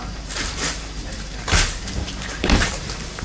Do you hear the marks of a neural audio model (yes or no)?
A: yes